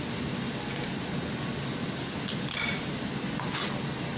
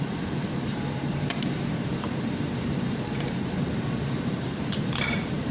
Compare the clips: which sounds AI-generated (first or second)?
second